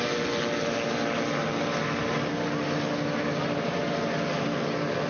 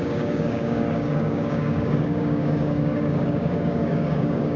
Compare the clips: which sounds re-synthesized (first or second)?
second